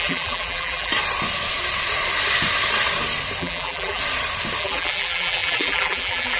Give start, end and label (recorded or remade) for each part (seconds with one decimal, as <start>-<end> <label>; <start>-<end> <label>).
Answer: 0.0-0.9 remade; 0.9-3.4 recorded; 3.4-4.0 remade; 4.0-4.6 recorded; 4.6-6.4 remade